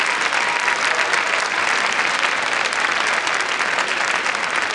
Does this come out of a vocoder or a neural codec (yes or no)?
no